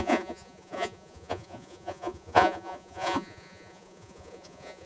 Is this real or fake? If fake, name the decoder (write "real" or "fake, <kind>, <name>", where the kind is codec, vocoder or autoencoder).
fake, vocoder, Vocos